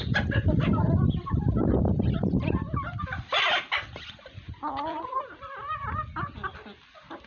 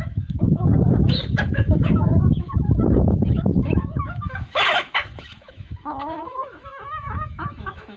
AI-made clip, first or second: second